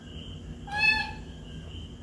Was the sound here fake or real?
real